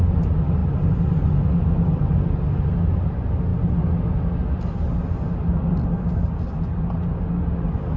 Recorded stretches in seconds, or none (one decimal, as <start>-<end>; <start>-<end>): 0.0-8.0